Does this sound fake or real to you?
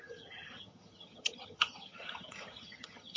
fake